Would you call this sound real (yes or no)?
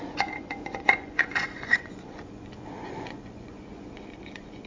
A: no